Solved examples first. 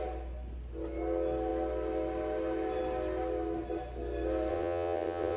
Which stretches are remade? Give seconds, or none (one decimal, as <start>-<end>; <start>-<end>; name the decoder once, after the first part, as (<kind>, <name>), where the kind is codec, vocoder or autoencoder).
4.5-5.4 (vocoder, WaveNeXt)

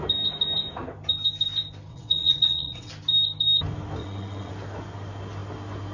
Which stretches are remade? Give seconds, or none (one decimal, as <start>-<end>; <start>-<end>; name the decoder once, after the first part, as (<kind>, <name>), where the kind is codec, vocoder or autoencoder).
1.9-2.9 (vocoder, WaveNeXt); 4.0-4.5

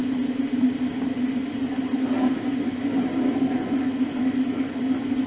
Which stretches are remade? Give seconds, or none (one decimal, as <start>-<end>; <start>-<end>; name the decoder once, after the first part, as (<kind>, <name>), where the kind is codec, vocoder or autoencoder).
none

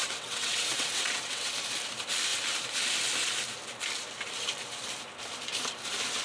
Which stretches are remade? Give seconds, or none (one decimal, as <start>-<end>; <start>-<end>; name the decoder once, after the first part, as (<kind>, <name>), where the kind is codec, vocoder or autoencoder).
0.0-1.5 (vocoder, WaveNeXt)

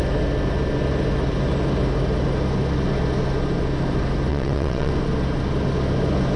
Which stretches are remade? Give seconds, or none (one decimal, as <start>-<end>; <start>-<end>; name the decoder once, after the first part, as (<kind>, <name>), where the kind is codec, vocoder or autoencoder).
4.3-4.9 (vocoder, WaveNeXt)

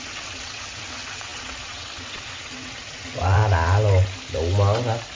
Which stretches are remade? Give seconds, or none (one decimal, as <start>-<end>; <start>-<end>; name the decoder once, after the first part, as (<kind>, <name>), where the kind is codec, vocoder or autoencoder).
0.0-3.4 (vocoder, WaveNeXt)